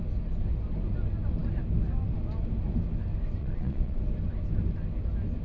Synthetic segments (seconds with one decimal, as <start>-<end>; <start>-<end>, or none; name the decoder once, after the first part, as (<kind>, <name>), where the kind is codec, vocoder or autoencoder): 3.4-4.0 (vocoder, Vocos)

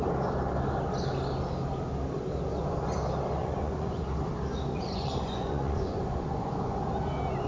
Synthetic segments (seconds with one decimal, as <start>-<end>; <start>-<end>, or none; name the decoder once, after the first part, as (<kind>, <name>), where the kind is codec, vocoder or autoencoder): 3.4-4.0 (vocoder, Vocos); 4.7-6.9

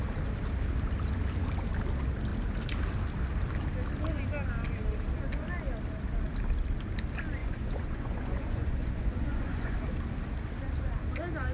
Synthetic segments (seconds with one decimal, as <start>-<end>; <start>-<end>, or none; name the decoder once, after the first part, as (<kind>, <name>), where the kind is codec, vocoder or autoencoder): 7.4-9.8 (vocoder, Vocos)

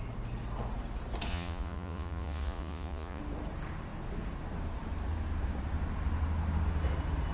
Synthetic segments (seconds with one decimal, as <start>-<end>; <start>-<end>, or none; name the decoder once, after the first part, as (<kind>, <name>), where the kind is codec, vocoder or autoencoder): 1.3-3.2 (vocoder, Vocos)

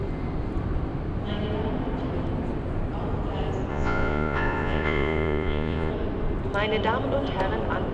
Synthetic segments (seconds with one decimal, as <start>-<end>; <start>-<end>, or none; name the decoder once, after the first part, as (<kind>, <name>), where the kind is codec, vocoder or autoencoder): 3.7-5.9 (vocoder, Vocos)